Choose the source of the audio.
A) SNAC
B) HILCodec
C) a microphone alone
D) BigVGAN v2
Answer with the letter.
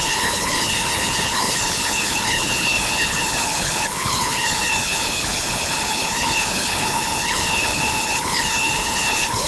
B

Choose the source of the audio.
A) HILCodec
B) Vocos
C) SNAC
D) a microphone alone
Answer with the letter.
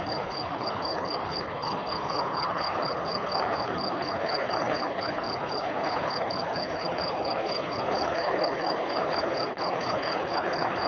A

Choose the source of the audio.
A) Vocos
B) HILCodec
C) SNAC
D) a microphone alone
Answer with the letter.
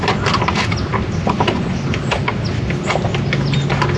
D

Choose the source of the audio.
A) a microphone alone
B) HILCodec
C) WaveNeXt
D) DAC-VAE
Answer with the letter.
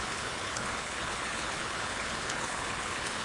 B